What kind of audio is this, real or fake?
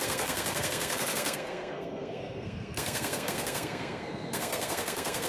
fake